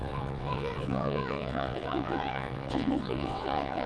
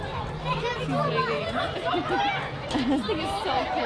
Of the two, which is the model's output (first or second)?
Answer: first